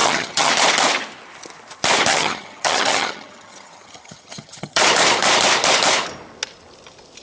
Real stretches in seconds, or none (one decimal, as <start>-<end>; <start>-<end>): 0.5-2.1; 4.8-7.2